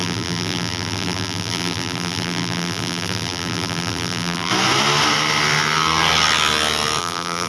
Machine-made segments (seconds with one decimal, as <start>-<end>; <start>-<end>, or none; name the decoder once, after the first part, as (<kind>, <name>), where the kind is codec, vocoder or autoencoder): 0.0-4.5 (vocoder, BigVGAN v2); 7.0-7.5